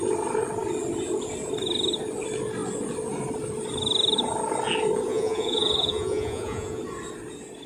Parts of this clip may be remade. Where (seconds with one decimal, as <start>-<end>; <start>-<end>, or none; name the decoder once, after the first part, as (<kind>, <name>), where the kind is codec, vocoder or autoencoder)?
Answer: 5.1-6.8 (vocoder, Vocos)